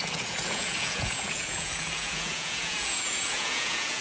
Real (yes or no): no